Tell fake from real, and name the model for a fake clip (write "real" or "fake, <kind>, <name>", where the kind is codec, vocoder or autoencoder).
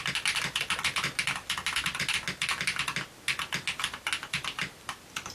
real